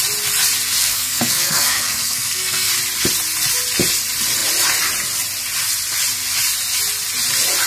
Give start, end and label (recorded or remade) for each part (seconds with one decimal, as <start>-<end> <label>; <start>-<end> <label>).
0.0-0.8 recorded; 0.8-2.7 remade; 2.7-7.7 recorded

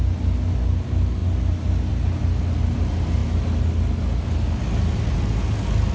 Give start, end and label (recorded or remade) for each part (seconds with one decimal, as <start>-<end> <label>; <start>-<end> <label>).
0.0-5.9 recorded

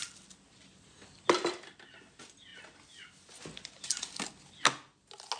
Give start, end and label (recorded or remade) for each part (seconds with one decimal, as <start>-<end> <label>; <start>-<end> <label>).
0.0-5.4 recorded

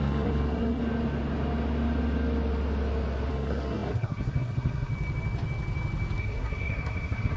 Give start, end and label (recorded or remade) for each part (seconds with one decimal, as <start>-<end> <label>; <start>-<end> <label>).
0.0-0.8 remade; 0.8-3.3 recorded; 3.3-4.9 remade; 4.9-6.2 recorded; 6.2-7.4 remade

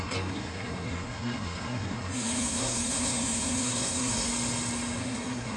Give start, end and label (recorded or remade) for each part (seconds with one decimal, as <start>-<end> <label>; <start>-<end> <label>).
0.0-4.3 remade; 4.3-5.0 recorded; 5.0-5.6 remade

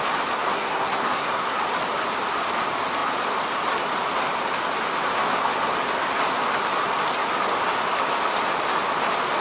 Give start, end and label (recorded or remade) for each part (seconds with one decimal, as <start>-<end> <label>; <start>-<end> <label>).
0.0-0.5 recorded; 0.5-1.6 remade; 1.6-9.4 recorded

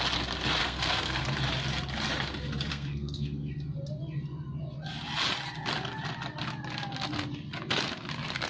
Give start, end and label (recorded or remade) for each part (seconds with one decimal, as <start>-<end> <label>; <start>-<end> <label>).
0.0-0.6 recorded; 0.6-1.2 remade; 1.2-2.7 recorded; 2.7-3.5 remade; 3.5-8.5 recorded

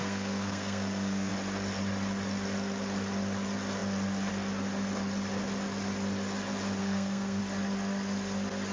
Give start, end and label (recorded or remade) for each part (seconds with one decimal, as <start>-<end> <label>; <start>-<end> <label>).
0.0-1.3 remade; 1.3-6.8 recorded; 6.8-7.4 remade; 7.4-8.7 recorded